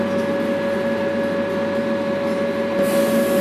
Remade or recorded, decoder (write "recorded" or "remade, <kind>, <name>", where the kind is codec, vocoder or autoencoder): recorded